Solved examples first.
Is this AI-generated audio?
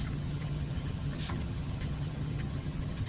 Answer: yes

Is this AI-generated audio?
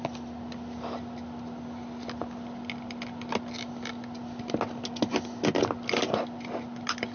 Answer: no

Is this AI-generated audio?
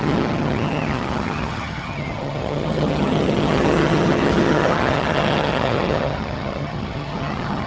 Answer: yes